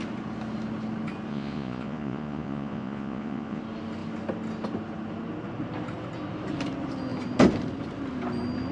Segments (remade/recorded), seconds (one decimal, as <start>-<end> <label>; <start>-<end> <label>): 0.0-1.3 recorded; 1.3-3.6 remade; 3.6-8.7 recorded